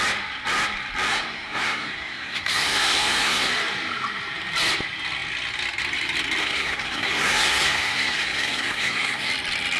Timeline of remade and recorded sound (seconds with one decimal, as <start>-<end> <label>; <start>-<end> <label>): 0.0-1.1 recorded; 1.1-3.5 remade; 3.5-6.4 recorded; 6.4-9.3 remade; 9.3-9.8 recorded